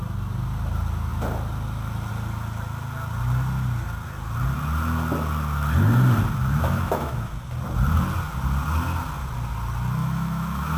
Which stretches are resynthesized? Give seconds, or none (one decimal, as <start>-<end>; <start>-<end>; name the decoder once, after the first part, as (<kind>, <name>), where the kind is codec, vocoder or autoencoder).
6.4-7.3 (autoencoder, DAC-VAE); 10.0-10.8